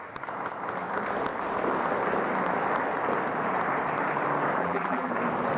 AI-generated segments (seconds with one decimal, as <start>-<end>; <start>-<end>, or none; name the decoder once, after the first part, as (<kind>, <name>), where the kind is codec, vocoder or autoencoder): 4.6-5.1 (vocoder, BigVGAN v2)